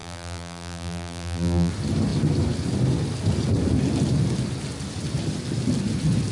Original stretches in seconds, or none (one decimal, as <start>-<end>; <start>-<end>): 1.7-6.3